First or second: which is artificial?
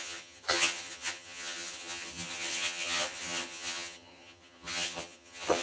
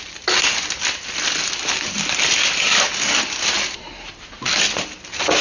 first